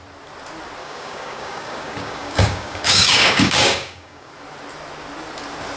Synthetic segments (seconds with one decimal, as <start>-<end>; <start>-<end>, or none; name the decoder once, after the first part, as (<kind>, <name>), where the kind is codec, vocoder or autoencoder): 0.8-4.3 (codec, DAC)